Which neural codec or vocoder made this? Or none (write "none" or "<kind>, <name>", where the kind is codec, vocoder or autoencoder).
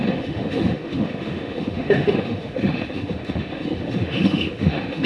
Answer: autoencoder, DAC-VAE